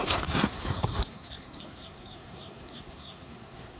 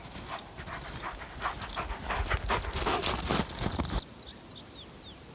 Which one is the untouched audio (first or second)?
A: second